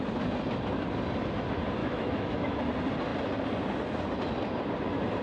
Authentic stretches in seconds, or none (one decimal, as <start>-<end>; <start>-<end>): 0.0-1.8; 2.6-5.2